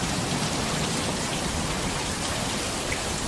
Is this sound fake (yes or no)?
no